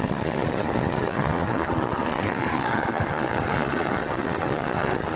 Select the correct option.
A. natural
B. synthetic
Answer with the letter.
B